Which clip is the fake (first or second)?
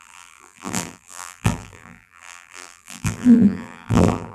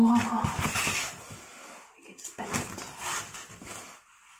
first